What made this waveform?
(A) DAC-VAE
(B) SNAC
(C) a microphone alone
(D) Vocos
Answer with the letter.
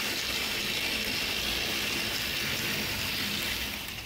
C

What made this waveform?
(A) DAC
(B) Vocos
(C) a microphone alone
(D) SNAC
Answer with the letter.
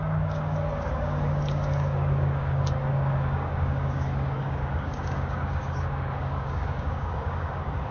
A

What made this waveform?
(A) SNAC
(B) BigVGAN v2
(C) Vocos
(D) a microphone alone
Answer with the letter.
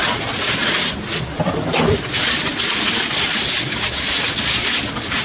D